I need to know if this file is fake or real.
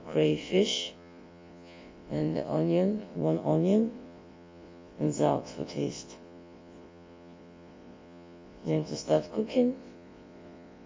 fake